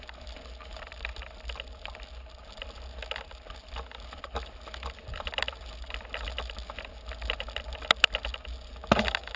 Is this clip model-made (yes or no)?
no